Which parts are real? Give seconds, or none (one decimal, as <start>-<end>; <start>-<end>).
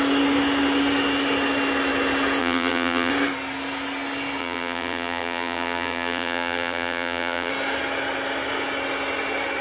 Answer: 0.0-2.4; 3.1-4.4; 7.5-9.6